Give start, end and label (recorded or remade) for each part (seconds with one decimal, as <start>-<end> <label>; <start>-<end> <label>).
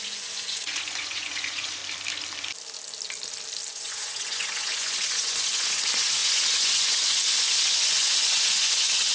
0.0-1.8 remade; 1.8-3.7 recorded; 3.7-9.1 remade